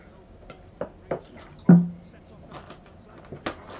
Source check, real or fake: real